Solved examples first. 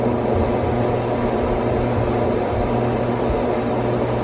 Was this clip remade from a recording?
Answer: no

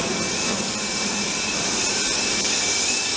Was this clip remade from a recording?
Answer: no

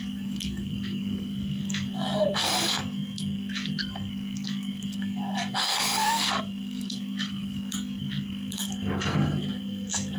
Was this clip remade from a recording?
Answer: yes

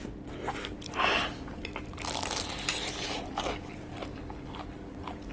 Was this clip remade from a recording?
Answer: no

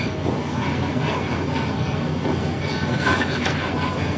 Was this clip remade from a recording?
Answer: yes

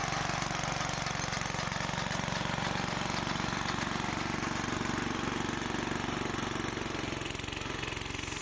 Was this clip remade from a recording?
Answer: no